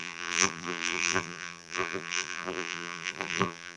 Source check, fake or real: fake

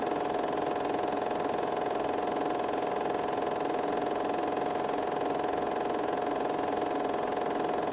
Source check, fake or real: real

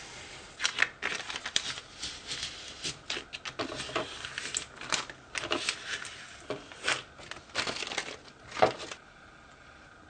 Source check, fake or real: real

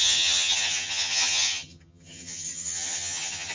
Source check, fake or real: fake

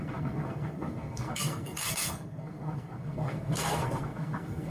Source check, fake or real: fake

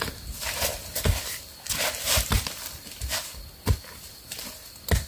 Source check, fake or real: real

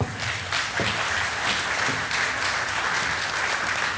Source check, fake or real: real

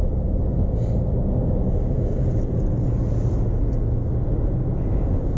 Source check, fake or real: real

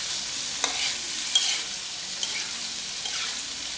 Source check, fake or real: real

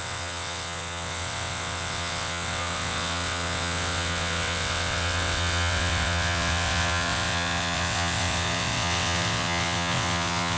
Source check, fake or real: fake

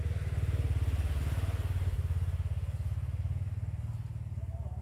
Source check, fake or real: real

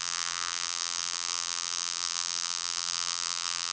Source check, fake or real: fake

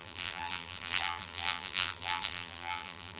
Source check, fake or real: fake